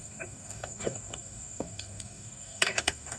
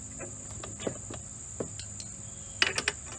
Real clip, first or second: second